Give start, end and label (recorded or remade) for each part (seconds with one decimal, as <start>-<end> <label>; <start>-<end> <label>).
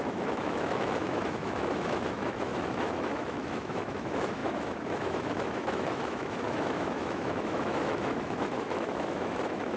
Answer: 0.0-9.8 remade